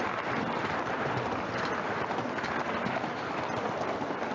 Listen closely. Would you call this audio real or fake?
real